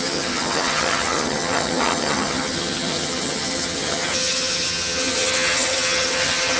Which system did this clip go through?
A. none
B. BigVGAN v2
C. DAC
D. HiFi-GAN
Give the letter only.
D